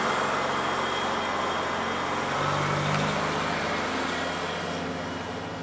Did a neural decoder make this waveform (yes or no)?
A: no